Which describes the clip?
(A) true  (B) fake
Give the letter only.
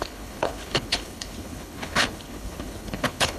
B